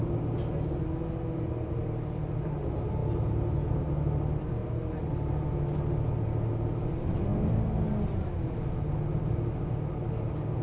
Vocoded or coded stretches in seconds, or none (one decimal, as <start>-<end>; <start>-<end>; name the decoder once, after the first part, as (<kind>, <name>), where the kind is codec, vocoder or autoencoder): none